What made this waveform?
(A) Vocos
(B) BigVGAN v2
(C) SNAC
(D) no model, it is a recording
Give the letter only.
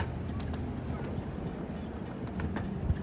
D